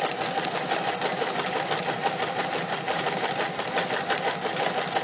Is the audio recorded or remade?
recorded